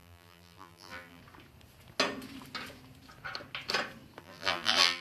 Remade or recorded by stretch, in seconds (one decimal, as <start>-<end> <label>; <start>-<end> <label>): 0.0-1.2 remade; 1.2-4.2 recorded; 4.2-5.0 remade